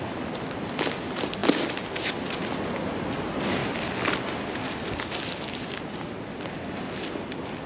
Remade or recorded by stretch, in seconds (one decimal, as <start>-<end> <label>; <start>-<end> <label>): 0.0-7.7 recorded